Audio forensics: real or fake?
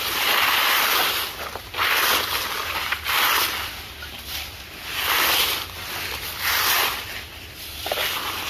real